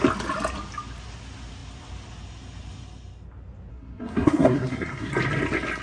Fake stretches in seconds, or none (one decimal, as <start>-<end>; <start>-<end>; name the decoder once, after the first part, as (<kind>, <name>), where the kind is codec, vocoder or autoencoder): 3.7-5.1 (codec, SNAC)